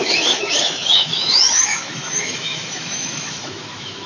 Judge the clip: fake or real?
fake